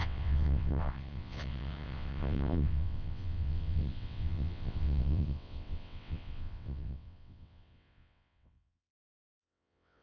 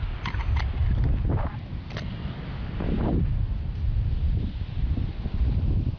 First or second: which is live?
second